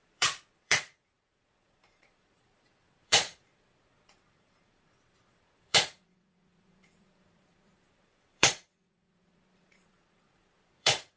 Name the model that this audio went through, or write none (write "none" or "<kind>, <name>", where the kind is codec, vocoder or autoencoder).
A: vocoder, Vocos